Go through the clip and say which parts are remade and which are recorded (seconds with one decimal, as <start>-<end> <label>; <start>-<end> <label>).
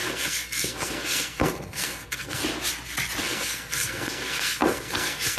0.0-2.4 remade; 2.4-3.2 recorded; 3.2-5.4 remade